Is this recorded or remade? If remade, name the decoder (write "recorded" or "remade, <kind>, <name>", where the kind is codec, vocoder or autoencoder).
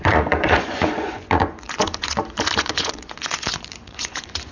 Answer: remade, vocoder, Vocos